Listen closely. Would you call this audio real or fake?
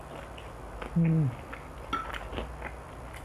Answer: real